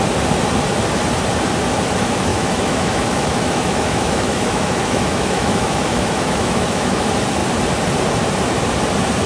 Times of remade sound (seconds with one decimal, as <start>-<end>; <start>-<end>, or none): 2.3-7.0